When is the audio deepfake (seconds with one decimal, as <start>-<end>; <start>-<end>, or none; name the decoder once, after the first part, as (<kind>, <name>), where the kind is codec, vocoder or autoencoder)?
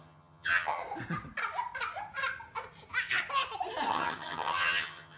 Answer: 0.0-0.8 (vocoder, HiFi-GAN); 3.9-5.2